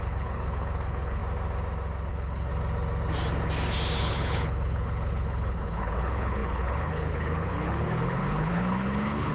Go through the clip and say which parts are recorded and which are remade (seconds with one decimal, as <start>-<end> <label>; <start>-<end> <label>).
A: 0.0-1.2 remade; 1.2-2.1 recorded; 2.1-2.5 remade; 2.5-4.0 recorded; 4.0-9.3 remade